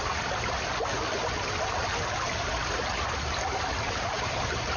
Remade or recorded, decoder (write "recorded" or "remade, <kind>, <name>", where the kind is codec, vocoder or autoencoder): recorded